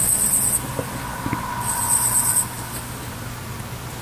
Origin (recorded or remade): recorded